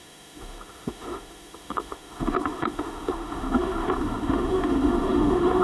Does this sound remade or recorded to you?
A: remade